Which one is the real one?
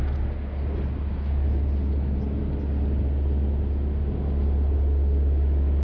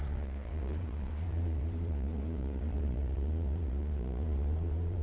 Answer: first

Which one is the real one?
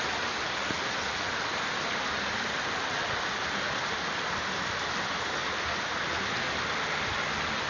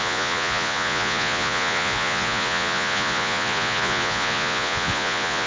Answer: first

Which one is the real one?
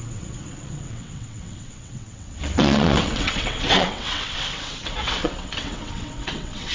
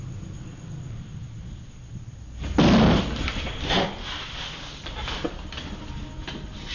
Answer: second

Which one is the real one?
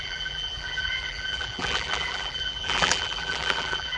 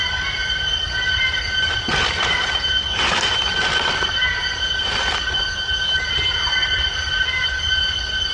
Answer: second